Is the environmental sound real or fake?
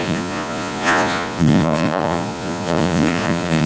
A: fake